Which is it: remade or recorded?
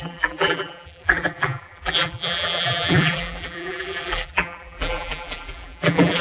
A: remade